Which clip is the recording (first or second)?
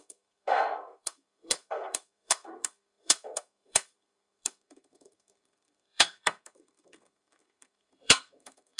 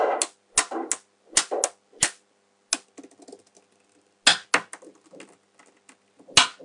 second